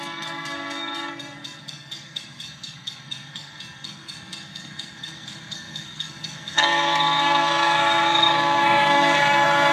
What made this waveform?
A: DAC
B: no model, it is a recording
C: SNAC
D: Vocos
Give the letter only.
C